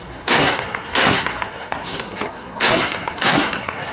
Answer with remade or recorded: remade